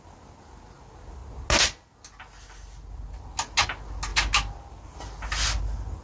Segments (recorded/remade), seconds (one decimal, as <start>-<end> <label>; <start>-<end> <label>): 0.0-6.0 recorded